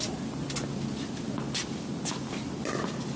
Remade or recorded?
recorded